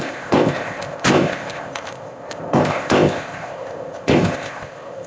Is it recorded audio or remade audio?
remade